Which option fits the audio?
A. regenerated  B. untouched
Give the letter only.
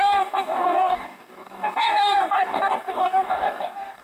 A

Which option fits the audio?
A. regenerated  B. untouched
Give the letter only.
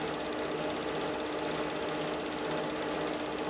B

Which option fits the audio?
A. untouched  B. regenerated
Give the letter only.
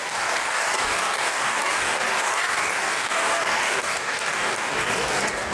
B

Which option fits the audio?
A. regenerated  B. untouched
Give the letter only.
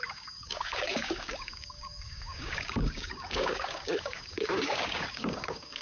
A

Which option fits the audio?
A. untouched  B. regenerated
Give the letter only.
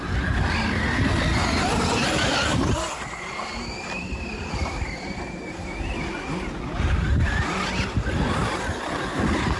A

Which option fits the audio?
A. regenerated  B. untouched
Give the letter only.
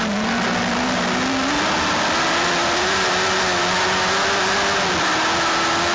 B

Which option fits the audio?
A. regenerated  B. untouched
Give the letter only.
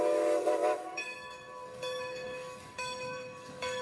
A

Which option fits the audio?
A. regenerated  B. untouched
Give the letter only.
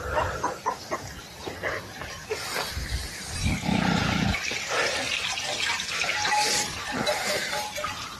B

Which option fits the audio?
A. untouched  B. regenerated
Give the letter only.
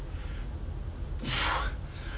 A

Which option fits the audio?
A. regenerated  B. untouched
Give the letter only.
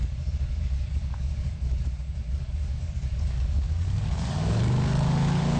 A